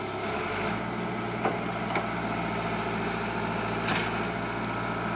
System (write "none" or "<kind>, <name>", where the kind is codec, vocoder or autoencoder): none